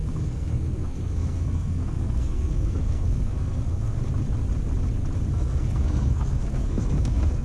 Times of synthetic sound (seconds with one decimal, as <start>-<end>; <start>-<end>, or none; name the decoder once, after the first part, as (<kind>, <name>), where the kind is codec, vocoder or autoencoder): 0.0-4.0 (codec, SNAC); 5.3-7.4